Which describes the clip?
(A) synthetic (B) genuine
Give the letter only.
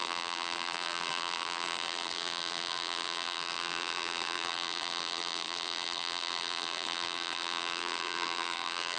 A